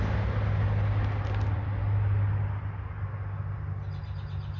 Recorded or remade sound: recorded